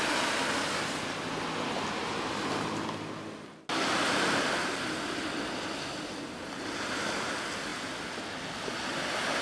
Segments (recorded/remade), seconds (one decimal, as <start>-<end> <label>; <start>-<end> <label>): 0.0-9.4 recorded